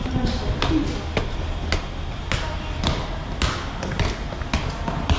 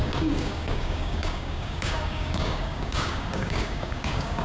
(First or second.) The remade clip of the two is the second